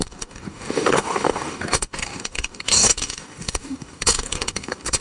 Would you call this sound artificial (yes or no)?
yes